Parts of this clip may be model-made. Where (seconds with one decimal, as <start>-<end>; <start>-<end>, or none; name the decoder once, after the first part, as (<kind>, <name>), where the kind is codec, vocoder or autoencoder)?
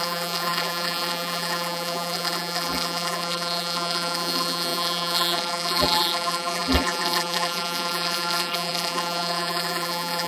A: 0.0-10.3 (vocoder, BigVGAN v2)